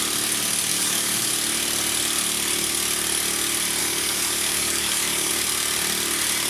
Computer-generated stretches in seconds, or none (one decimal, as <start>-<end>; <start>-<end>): 0.7-1.3; 3.8-5.3